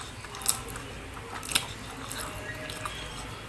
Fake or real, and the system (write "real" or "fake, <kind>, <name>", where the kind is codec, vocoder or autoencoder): real